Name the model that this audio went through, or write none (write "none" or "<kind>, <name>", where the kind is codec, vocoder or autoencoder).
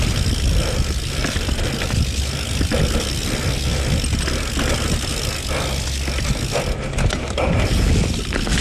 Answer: none